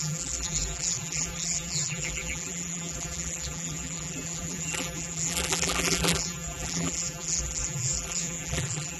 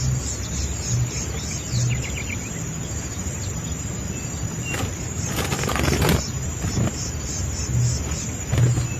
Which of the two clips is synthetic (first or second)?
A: first